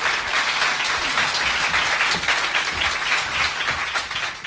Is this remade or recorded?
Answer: recorded